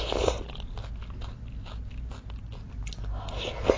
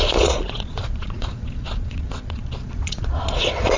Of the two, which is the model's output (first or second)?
second